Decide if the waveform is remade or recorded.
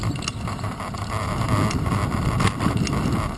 recorded